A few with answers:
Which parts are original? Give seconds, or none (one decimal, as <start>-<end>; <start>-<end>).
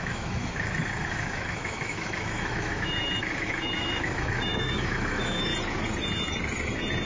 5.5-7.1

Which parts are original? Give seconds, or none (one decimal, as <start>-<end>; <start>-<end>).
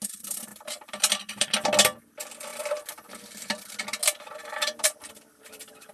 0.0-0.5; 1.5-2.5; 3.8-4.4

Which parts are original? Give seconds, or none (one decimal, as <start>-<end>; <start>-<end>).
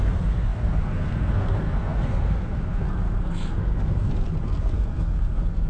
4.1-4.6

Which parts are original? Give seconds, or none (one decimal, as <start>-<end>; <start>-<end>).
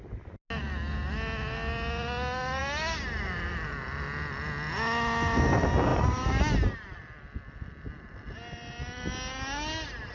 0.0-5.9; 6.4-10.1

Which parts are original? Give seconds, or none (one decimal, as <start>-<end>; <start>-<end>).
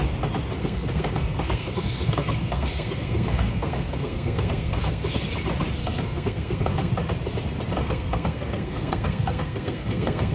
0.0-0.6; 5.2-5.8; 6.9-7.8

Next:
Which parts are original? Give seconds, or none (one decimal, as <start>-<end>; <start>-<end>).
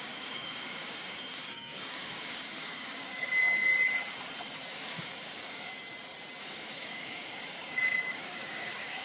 3.7-4.7; 5.7-6.4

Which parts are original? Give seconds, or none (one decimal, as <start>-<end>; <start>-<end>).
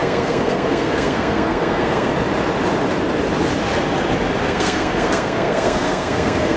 2.1-4.4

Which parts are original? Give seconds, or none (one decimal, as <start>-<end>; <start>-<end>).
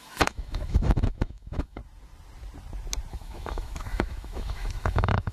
1.8-3.1